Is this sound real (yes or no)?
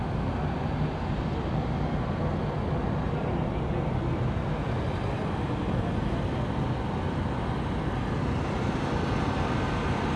yes